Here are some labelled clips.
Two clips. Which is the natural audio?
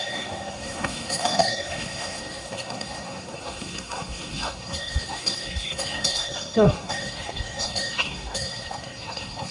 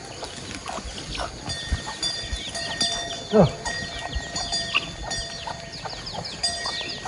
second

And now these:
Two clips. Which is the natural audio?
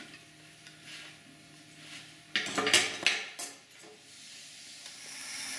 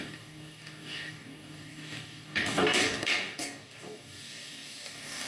first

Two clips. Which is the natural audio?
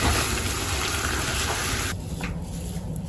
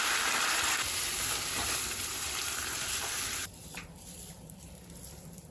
first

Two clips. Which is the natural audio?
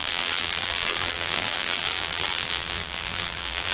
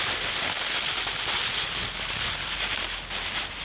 second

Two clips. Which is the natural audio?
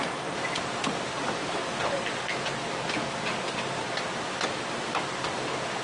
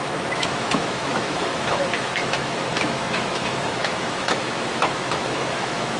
first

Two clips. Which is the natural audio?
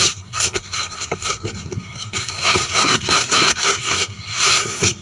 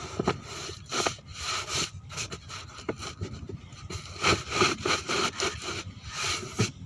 second